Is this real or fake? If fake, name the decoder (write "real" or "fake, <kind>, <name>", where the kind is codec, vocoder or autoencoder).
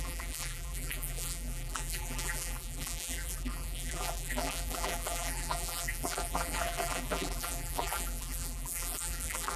fake, vocoder, BigVGAN v2